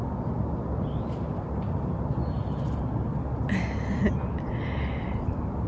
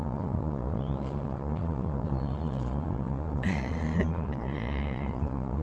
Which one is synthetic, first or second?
second